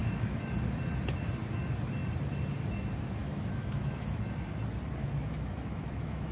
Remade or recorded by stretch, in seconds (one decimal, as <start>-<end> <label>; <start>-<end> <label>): 0.0-0.5 remade; 0.5-3.2 recorded; 3.2-4.2 remade; 4.2-5.0 recorded; 5.0-6.3 remade